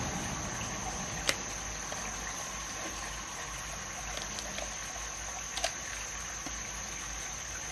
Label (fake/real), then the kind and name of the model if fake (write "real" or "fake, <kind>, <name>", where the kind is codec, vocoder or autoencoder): real